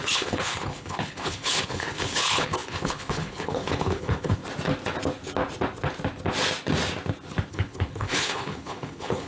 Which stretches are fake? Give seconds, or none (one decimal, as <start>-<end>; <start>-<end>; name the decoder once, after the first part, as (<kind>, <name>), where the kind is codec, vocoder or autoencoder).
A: 0.0-4.4 (codec, HILCodec); 7.5-9.3